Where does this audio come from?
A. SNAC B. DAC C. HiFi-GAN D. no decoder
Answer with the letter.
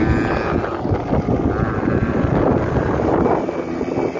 D